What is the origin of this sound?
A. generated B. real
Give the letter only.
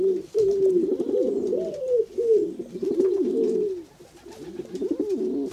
B